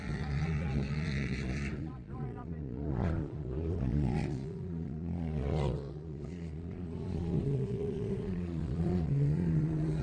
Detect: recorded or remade remade